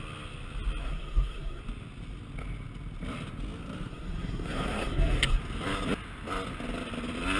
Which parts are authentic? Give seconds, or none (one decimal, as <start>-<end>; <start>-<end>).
0.0-0.8; 1.6-3.9; 5.4-7.4